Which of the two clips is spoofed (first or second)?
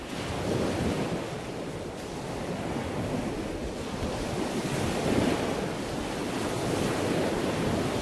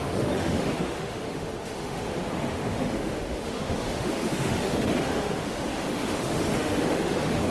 second